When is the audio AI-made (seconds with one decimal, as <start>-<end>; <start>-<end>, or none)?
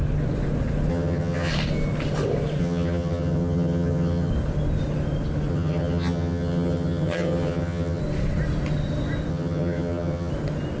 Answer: 0.9-1.5; 2.6-4.3; 5.5-8.0; 9.3-10.3